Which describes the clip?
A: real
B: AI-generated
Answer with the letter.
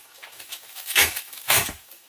B